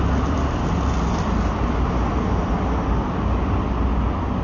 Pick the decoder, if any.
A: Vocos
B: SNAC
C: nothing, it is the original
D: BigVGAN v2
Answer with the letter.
C